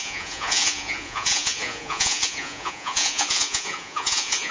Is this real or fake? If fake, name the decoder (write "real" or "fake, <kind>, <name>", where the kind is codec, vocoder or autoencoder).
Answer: fake, vocoder, Vocos